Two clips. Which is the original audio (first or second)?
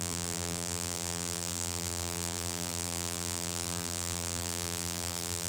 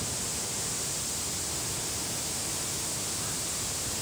second